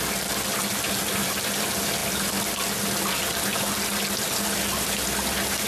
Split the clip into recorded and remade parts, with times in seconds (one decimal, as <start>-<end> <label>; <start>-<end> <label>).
0.0-5.7 recorded